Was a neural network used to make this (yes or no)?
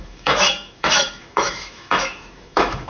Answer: yes